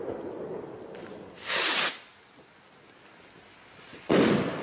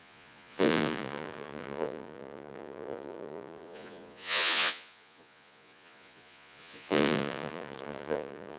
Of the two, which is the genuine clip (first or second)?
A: first